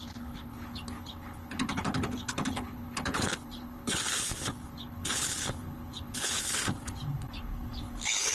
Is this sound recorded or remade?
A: remade